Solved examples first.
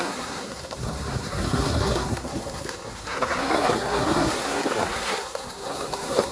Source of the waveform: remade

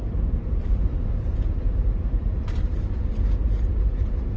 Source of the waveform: remade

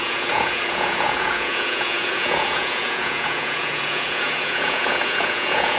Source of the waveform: remade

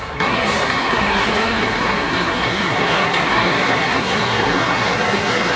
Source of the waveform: remade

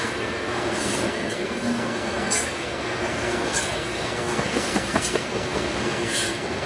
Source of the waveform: remade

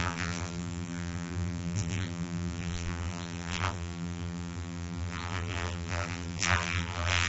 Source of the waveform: remade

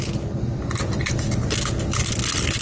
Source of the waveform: recorded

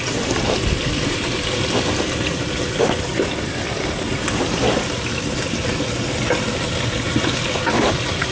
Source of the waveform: recorded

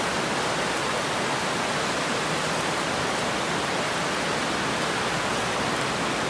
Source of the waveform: recorded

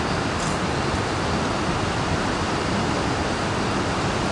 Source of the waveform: recorded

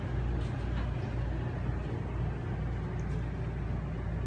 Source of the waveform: recorded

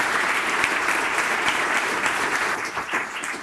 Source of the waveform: remade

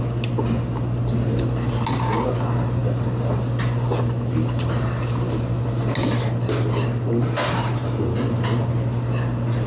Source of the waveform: recorded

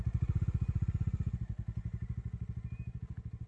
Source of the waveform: recorded